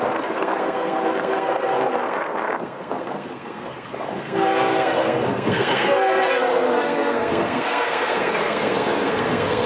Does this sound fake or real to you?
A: fake